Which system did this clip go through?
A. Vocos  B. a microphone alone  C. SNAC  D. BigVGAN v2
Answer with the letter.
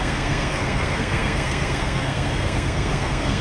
C